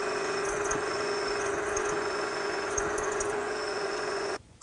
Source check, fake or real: fake